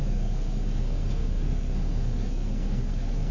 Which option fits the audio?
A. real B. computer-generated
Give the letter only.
B